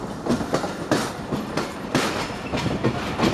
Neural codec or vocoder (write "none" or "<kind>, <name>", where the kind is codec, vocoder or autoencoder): none